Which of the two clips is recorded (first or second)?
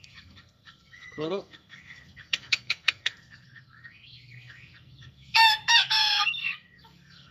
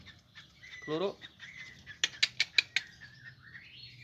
second